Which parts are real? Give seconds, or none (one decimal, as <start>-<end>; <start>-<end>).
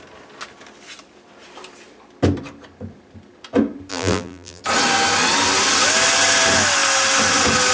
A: 0.0-3.9; 4.6-7.7